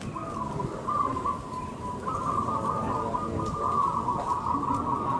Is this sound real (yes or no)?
yes